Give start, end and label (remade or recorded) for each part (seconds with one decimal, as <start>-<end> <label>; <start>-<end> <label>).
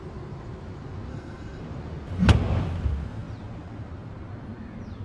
0.0-1.1 recorded; 1.1-1.6 remade; 1.6-5.0 recorded